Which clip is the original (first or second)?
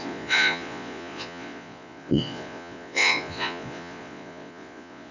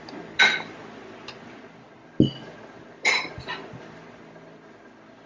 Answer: second